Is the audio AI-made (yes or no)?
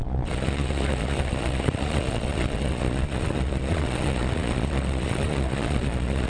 yes